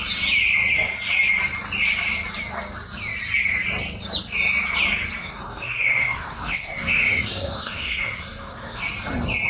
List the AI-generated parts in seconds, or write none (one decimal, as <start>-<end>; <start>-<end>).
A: 5.2-8.8